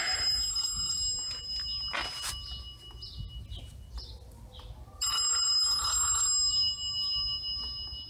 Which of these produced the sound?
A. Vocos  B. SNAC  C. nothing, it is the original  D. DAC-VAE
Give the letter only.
C